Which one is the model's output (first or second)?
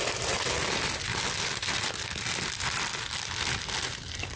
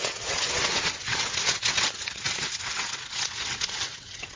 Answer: second